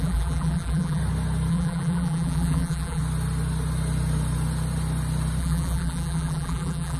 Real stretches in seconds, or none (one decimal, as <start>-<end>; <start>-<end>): 1.0-1.5; 3.0-5.4